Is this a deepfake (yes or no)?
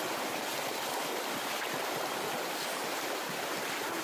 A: no